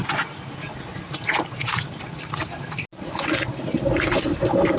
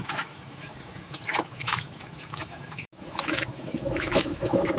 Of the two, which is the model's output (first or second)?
second